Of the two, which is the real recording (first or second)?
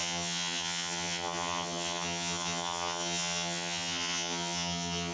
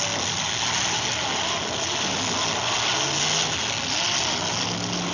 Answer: second